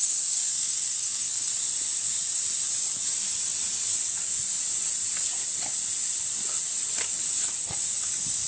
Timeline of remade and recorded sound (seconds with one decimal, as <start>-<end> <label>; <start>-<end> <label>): 0.0-1.5 remade; 1.5-8.5 recorded